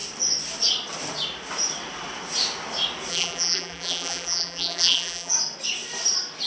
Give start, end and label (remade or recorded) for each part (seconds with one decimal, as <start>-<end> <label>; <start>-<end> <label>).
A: 0.0-3.1 recorded; 3.1-5.3 remade; 5.3-6.5 recorded